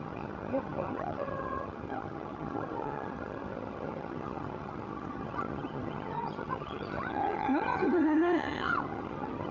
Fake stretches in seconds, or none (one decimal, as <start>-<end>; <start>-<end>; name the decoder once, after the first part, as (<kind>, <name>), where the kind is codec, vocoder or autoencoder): 0.0-9.5 (vocoder, HiFi-GAN)